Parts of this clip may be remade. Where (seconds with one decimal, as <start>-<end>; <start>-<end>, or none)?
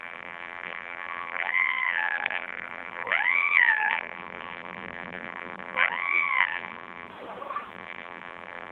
0.0-7.1; 7.7-8.7